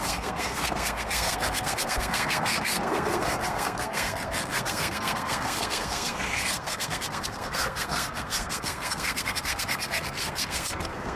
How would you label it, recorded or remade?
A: remade